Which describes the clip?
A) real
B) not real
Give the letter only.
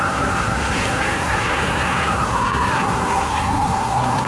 B